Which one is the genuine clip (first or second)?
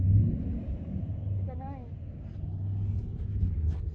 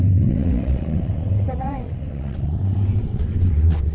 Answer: first